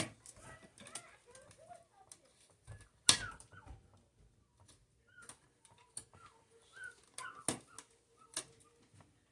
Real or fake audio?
real